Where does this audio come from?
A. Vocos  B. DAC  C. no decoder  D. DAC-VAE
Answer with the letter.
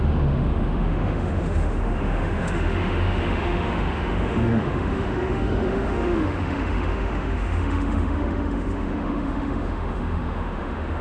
D